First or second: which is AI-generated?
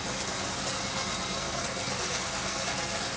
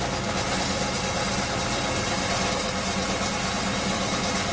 first